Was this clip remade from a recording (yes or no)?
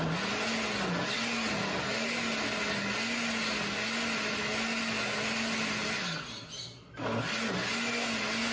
no